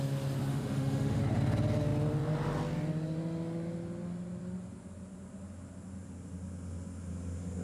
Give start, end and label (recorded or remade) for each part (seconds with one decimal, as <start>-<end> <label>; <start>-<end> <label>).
0.0-0.5 recorded; 0.5-1.2 remade; 1.2-7.6 recorded